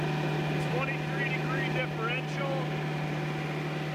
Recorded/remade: recorded